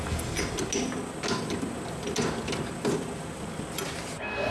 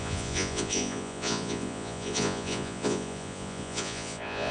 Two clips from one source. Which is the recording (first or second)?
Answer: first